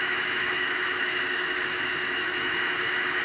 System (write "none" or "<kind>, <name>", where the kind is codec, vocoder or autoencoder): autoencoder, DAC-VAE